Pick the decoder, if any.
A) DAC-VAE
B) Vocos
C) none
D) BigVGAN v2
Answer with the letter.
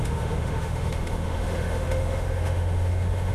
A